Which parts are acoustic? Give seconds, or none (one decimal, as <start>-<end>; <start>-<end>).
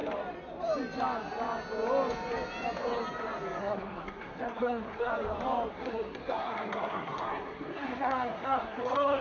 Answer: 0.0-3.6; 5.1-5.7